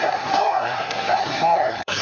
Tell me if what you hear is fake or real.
fake